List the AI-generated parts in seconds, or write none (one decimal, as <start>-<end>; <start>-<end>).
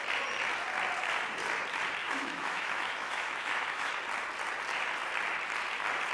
2.0-3.9